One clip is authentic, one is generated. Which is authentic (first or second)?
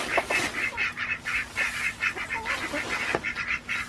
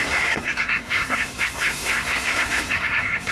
first